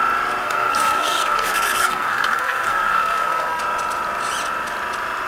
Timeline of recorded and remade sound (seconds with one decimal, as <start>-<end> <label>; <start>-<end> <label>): 0.0-0.4 recorded; 0.4-3.6 remade; 3.6-5.3 recorded